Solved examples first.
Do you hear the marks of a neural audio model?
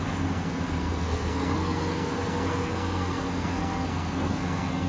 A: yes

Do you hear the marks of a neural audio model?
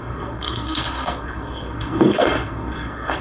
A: yes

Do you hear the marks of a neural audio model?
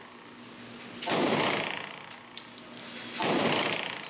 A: no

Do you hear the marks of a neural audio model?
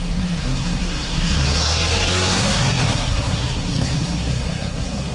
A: yes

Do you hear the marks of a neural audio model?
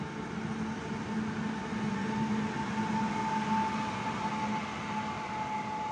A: no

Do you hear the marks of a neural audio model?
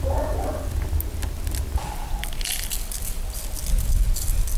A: no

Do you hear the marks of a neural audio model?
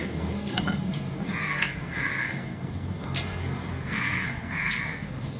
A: yes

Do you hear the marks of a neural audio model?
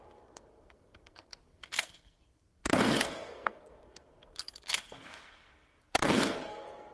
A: yes